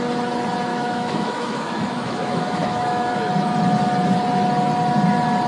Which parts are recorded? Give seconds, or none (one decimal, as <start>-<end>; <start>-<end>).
0.0-0.7; 3.3-5.5